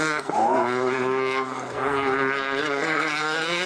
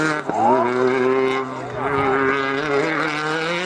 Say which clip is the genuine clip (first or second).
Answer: second